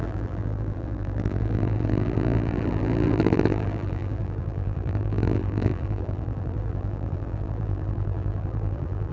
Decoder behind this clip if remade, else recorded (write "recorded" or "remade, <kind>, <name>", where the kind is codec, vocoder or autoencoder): remade, vocoder, BigVGAN v2